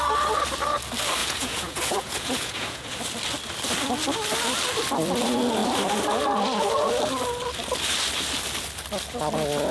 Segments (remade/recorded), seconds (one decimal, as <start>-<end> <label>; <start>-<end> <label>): 0.0-1.2 recorded; 1.2-2.9 remade; 2.9-9.7 recorded